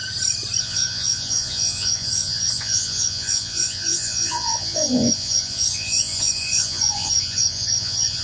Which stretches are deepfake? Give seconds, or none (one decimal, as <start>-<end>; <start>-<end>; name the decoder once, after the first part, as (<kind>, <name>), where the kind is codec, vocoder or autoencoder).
0.6-8.2 (vocoder, Vocos)